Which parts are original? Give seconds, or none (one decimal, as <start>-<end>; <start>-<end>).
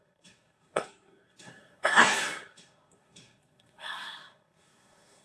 none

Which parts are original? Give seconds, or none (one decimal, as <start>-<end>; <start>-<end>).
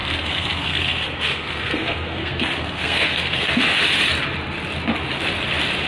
3.5-5.9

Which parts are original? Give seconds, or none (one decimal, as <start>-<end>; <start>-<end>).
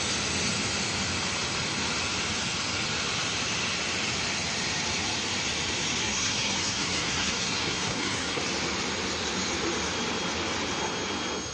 0.0-6.0; 8.4-11.5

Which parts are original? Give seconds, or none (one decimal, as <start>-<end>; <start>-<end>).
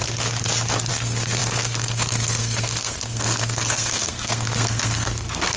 0.0-0.9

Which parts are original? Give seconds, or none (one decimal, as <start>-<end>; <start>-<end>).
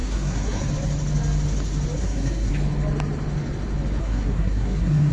0.7-2.0; 2.5-4.0